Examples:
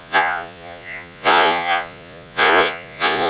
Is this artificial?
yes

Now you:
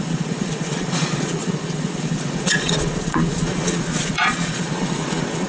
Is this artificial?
yes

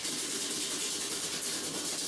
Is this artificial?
no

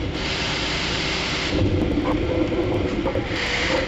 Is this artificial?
no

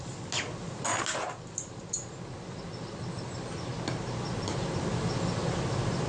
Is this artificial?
no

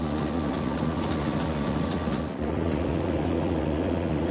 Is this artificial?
yes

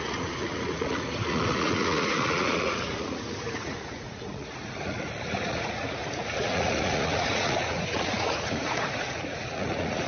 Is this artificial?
yes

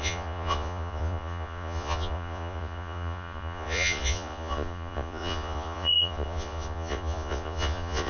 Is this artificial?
yes